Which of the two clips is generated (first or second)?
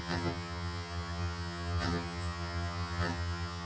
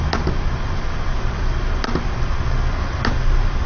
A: first